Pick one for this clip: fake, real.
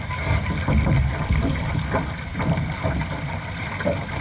real